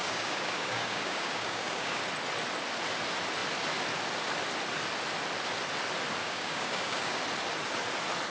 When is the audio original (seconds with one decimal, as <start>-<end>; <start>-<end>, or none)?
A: 2.0-6.2; 7.2-8.3